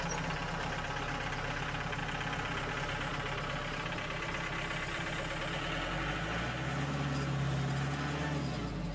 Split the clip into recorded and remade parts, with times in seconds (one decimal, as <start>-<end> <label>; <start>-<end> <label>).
0.0-3.1 recorded; 3.1-5.4 remade; 5.4-8.9 recorded